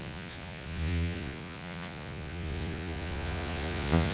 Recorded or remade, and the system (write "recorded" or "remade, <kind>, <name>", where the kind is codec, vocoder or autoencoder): remade, vocoder, Vocos